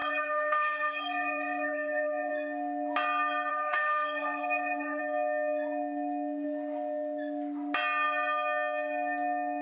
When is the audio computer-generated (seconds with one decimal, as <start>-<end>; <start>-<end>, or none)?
0.0-2.3; 3.5-5.0